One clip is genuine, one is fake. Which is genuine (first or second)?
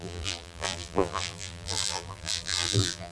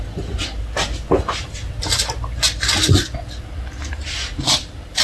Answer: second